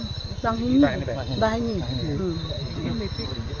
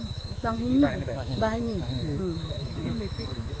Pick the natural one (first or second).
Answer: first